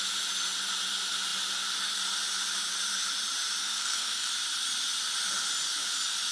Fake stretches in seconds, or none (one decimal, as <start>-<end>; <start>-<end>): 3.6-4.3